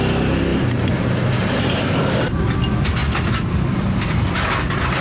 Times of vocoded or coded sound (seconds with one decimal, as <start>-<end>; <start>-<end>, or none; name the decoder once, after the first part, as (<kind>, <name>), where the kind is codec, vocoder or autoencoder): none